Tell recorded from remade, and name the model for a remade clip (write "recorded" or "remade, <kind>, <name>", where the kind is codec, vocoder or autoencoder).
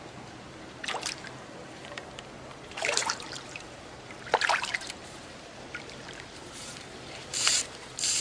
remade, vocoder, BigVGAN v2